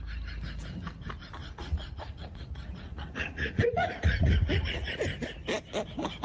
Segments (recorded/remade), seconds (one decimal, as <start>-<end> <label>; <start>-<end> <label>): 0.0-1.4 recorded; 1.4-5.0 remade; 5.0-6.2 recorded